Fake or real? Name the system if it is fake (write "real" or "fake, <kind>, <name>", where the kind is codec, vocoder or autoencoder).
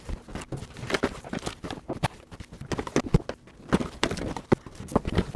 real